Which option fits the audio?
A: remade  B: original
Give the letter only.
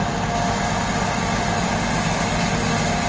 B